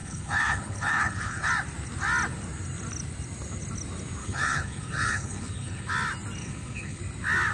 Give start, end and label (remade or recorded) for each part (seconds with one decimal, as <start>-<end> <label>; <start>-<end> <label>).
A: 0.0-1.5 remade; 1.5-4.2 recorded; 4.2-5.9 remade; 5.9-6.4 recorded; 6.4-7.0 remade; 7.0-7.5 recorded